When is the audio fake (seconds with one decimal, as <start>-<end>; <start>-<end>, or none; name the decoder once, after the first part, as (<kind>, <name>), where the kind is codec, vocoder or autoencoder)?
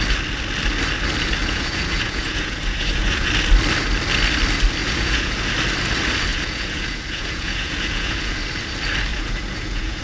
1.4-3.3 (vocoder, Vocos); 4.8-5.5; 6.3-8.4; 9.1-10.0